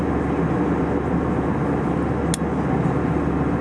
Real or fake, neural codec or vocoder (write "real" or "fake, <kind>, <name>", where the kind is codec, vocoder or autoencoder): real